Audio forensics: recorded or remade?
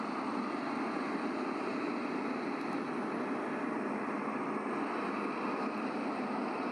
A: recorded